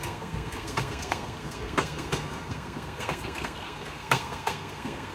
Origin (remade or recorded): remade